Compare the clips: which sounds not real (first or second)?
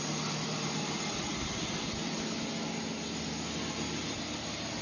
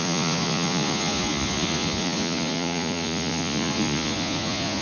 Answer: second